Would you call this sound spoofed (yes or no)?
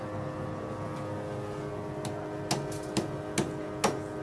no